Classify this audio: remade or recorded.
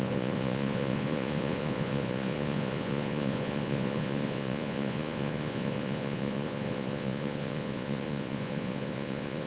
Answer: remade